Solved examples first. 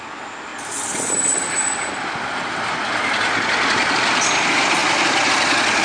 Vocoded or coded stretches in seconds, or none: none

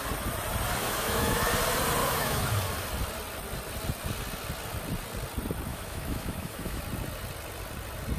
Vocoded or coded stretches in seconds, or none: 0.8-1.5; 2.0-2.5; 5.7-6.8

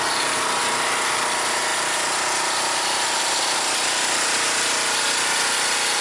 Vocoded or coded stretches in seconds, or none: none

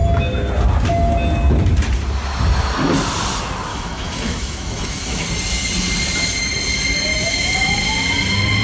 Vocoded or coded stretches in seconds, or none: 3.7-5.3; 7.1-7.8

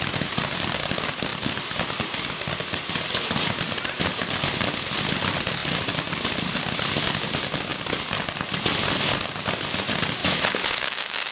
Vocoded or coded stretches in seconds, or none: 10.2-11.3